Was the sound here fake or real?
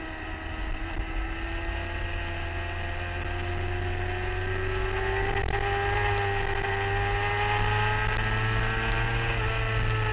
real